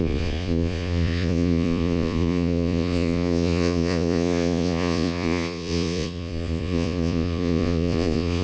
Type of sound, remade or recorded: remade